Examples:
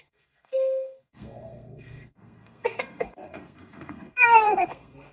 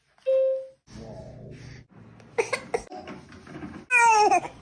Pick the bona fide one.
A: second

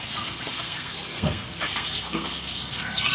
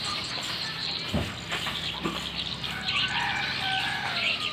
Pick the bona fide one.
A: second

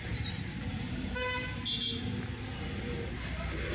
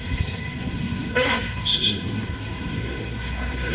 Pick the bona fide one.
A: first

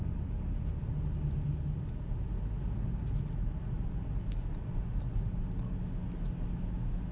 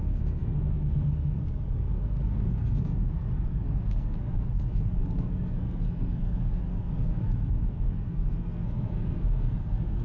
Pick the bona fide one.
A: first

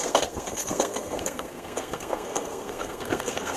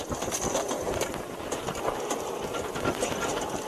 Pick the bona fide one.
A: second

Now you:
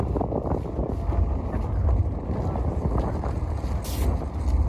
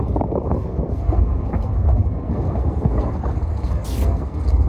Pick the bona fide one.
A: first